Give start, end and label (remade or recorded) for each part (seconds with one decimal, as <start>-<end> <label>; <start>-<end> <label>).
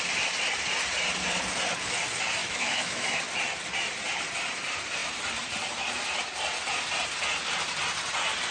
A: 0.0-2.4 recorded; 2.4-3.2 remade; 3.2-8.5 recorded